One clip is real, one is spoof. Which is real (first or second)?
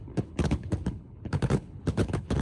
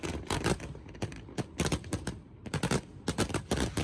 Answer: second